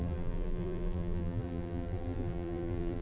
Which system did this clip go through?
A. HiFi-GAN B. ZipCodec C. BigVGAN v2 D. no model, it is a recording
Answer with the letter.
C